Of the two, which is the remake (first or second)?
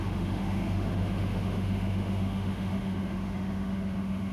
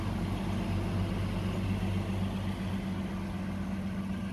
first